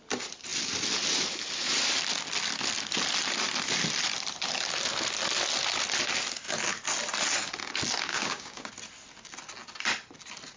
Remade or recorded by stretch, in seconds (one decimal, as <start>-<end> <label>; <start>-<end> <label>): 0.0-8.1 recorded; 8.1-8.7 remade; 8.7-10.6 recorded